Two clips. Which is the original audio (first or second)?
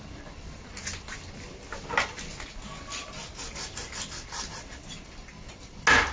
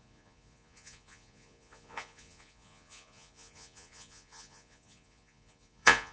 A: first